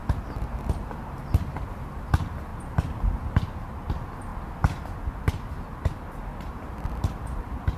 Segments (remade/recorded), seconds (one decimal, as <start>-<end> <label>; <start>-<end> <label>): 0.0-7.8 recorded